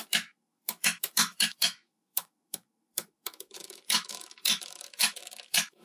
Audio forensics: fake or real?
fake